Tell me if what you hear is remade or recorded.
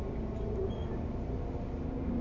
recorded